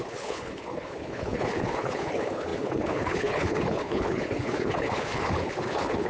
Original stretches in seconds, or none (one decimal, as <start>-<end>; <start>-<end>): none